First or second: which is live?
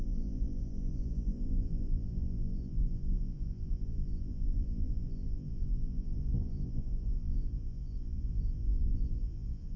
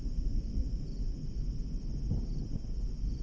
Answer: second